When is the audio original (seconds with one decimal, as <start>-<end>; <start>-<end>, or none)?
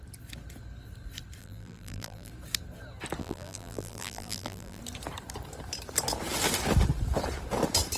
0.0-1.4; 2.3-3.2; 4.8-8.0